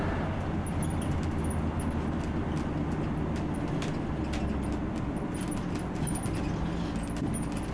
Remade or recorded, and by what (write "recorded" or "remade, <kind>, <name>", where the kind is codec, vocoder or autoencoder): recorded